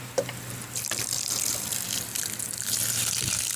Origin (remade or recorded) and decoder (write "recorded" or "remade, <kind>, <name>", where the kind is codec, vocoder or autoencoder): remade, vocoder, BigVGAN v2